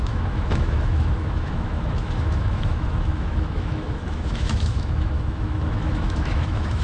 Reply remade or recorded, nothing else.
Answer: remade